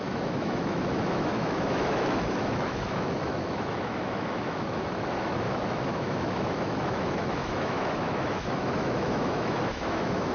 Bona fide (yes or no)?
no